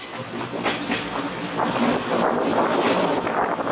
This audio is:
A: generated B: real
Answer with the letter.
B